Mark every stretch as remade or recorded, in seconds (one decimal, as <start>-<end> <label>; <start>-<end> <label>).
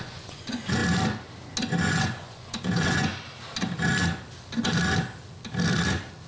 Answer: 0.0-0.8 remade; 0.8-1.8 recorded; 1.8-3.1 remade; 3.1-6.3 recorded